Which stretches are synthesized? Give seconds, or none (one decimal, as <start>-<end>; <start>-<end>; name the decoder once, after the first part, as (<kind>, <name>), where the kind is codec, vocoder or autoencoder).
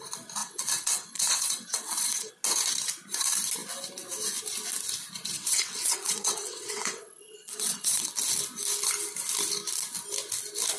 0.4-2.3 (vocoder, WaveNeXt); 5.3-8.1